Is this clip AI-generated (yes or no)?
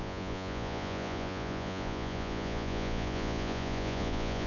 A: yes